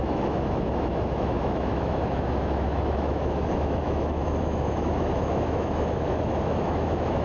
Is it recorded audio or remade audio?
remade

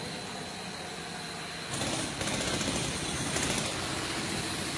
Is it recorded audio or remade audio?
recorded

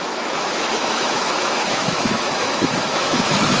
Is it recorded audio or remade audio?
remade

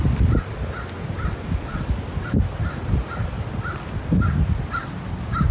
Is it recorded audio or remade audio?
recorded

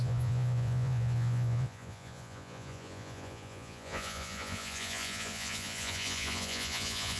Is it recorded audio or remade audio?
remade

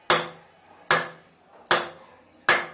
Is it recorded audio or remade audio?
recorded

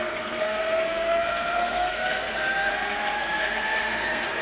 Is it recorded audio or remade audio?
remade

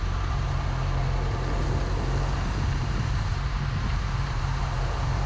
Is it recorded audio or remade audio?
remade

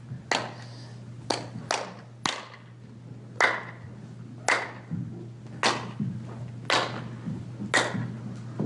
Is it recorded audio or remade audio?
recorded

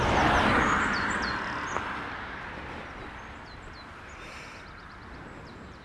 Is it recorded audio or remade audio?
recorded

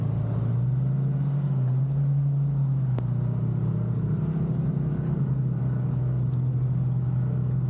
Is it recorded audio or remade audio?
recorded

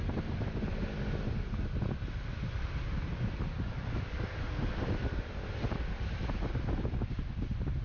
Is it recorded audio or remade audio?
recorded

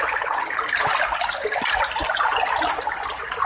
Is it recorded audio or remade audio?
recorded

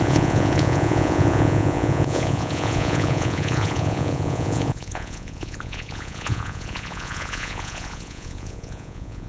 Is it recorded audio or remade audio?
remade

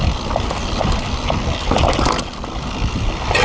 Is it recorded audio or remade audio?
recorded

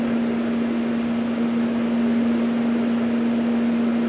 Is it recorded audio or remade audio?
recorded